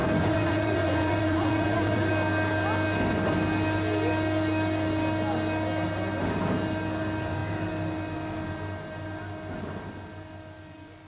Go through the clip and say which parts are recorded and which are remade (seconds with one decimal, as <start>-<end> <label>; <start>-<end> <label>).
0.0-2.1 remade; 2.1-11.1 recorded